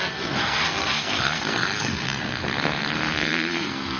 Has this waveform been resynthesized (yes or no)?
yes